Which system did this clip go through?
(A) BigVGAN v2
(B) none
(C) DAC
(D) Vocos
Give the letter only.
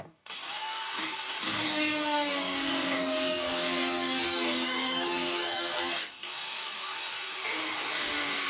C